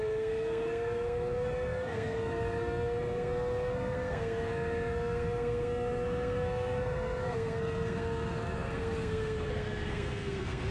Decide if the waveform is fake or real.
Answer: fake